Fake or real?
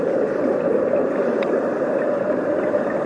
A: real